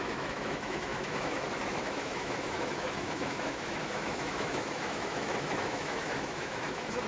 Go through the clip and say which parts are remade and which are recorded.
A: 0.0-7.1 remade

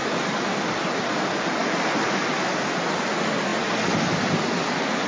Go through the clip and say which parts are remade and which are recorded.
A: 0.0-5.1 recorded

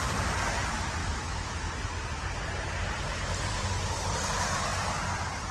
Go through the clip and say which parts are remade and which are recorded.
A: 0.0-1.0 recorded; 1.0-1.7 remade; 1.7-5.5 recorded

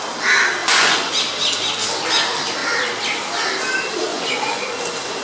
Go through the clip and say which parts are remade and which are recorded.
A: 0.0-0.6 recorded; 0.6-1.1 remade; 1.1-4.1 recorded; 4.1-4.8 remade; 4.8-5.2 recorded